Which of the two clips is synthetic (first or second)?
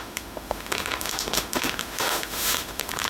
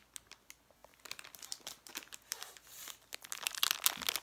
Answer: first